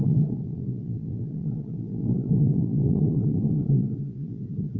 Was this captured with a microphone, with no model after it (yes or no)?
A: no